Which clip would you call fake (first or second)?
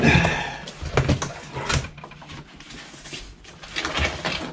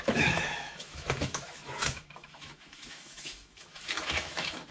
second